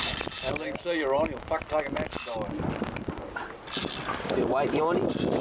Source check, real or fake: real